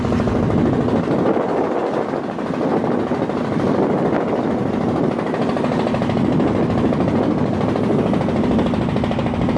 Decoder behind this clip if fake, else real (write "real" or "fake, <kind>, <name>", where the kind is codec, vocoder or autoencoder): real